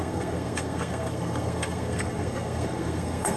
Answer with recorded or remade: remade